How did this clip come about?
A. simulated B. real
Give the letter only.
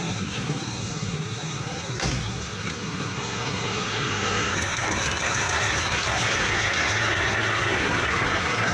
A